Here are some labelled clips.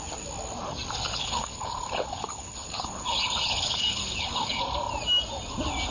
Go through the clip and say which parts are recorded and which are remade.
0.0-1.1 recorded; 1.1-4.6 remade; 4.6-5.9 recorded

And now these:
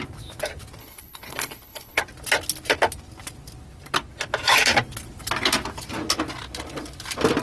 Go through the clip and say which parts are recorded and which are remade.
0.0-0.8 recorded; 0.8-2.0 remade; 2.0-7.4 recorded

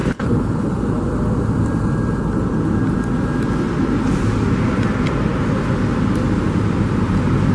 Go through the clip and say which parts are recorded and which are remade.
0.0-0.7 remade; 0.7-7.5 recorded

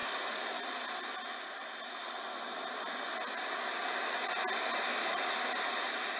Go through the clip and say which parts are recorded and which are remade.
0.0-6.2 recorded

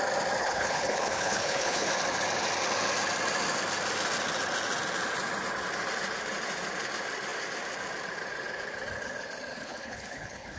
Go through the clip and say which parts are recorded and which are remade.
0.0-0.4 recorded; 0.4-1.9 remade; 1.9-9.5 recorded; 9.5-10.6 remade

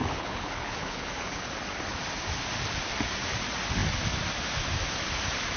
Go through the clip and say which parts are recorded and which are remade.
0.0-1.5 remade; 1.5-5.6 recorded

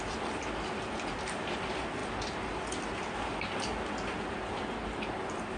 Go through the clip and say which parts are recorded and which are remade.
0.0-5.6 recorded

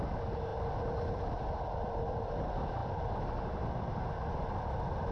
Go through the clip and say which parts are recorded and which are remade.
0.0-5.1 recorded